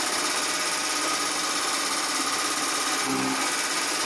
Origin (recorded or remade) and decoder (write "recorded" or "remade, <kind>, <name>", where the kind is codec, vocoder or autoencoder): recorded